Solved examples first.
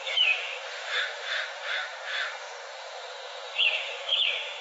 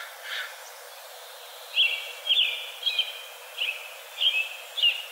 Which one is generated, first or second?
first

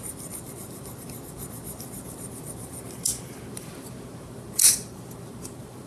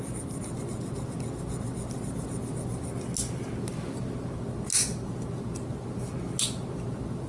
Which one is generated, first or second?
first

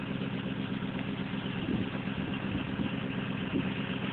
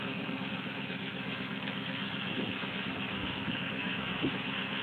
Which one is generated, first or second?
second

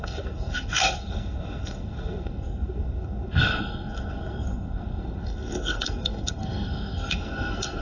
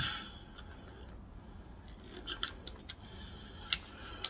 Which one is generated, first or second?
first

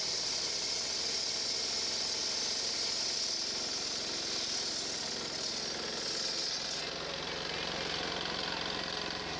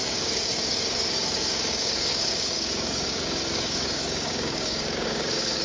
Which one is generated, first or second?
second